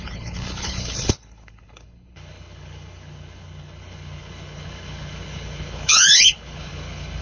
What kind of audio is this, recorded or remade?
remade